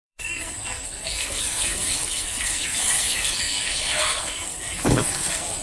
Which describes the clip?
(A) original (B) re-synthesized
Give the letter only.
B